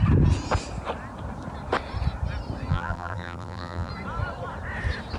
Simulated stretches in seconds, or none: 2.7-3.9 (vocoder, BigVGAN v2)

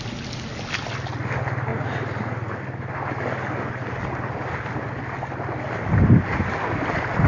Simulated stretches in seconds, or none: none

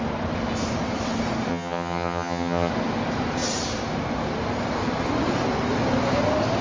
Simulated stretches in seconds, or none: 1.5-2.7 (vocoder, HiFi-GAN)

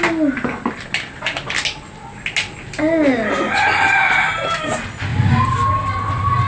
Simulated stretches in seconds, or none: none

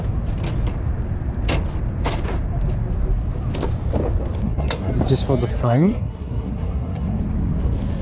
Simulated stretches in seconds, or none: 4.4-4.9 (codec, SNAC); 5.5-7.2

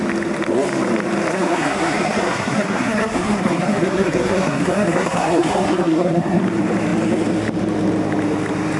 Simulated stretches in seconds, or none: 1.3-6.4 (codec, SNAC)